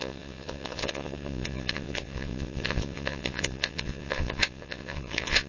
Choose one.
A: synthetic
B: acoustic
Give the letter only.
A